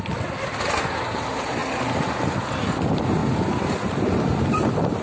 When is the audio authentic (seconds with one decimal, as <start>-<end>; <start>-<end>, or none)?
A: 1.6-2.2; 3.2-4.5